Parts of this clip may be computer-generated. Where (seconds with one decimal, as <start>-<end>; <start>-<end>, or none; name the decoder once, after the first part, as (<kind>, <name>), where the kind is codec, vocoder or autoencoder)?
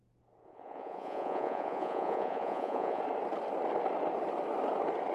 0.4-3.0 (vocoder, Vocos)